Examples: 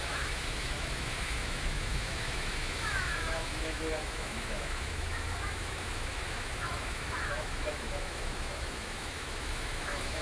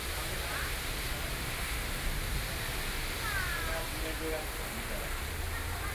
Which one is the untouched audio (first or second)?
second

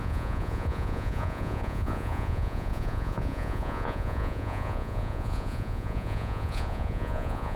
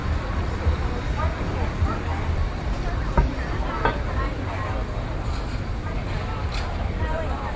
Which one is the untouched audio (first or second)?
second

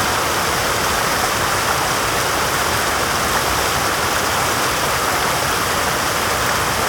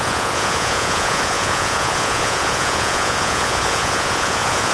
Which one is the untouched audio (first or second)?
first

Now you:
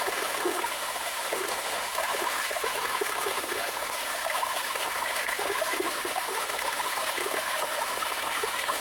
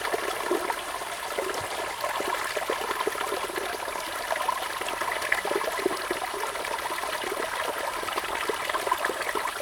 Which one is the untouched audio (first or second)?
second